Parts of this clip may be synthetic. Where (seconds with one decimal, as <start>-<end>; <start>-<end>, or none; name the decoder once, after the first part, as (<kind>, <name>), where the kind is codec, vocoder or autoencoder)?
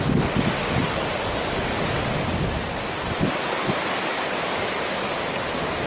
none